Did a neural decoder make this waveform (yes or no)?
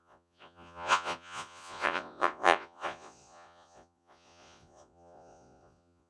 yes